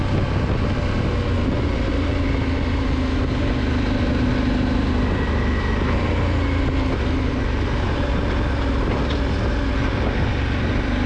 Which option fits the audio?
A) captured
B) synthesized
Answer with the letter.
A